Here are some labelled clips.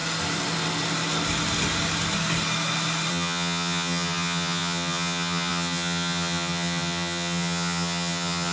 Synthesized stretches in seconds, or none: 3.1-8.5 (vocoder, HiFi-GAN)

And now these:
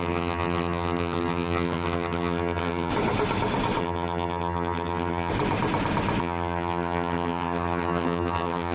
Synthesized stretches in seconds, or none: 0.0-2.9 (vocoder, HiFi-GAN); 3.8-5.3; 6.2-8.7

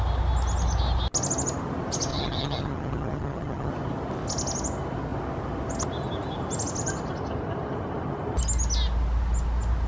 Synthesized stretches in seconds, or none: 2.1-3.7 (vocoder, HiFi-GAN)

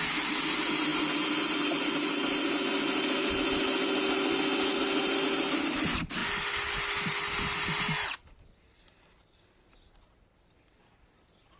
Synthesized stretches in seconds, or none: none

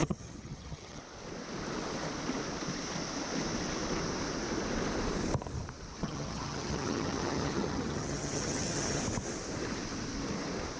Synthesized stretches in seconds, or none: 0.0-1.0 (vocoder, HiFi-GAN); 6.0-9.0

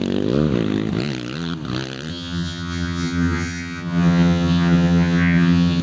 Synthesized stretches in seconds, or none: 2.1-5.8 (vocoder, HiFi-GAN)

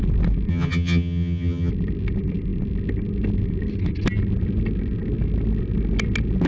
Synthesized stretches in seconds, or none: 0.5-1.7 (vocoder, HiFi-GAN)

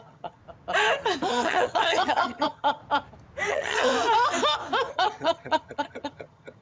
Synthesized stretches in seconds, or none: 0.0-0.4 (vocoder, HiFi-GAN); 1.3-2.8; 3.5-3.9; 4.9-6.6